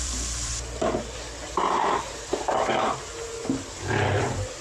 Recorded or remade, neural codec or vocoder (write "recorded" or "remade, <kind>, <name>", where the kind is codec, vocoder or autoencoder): remade, vocoder, BigVGAN v2